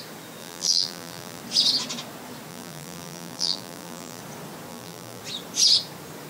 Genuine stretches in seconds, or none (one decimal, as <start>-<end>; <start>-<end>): 0.0-0.4; 1.4-2.5; 4.2-4.7; 5.2-6.3